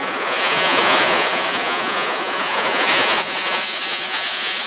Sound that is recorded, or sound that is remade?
remade